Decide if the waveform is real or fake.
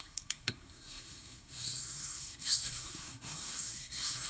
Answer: fake